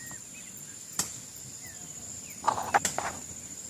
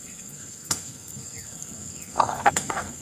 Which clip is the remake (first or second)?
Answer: second